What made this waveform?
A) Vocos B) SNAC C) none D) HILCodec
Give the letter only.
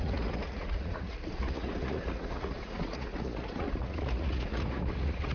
A